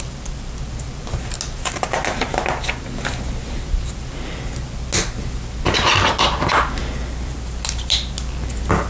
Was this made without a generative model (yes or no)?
yes